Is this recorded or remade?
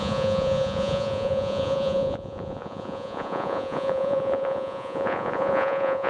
remade